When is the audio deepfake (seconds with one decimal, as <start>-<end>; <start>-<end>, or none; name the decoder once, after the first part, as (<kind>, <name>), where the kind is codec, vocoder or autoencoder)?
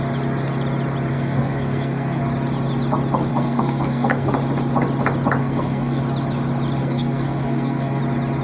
1.1-2.2 (codec, SNAC); 3.3-4.3; 5.4-6.0; 6.8-8.0